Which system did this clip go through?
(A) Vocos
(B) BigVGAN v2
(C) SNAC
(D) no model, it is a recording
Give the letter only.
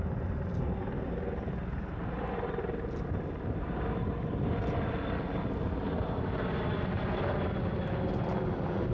D